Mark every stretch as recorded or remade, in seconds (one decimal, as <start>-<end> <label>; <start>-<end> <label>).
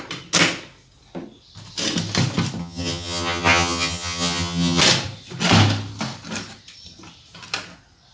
0.0-2.6 recorded; 2.6-4.8 remade; 4.8-8.1 recorded